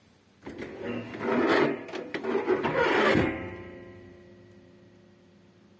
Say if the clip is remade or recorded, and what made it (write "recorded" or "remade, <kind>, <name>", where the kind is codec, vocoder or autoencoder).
recorded